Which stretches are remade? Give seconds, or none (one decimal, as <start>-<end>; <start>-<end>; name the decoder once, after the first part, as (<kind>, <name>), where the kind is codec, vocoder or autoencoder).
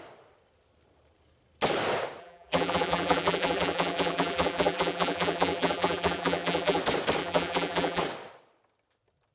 2.2-6.8 (vocoder, BigVGAN v2); 7.2-8.0